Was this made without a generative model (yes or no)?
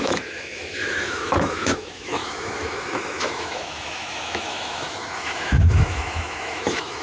no